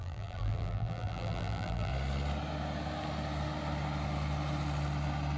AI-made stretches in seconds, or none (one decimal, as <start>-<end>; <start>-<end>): 0.0-1.9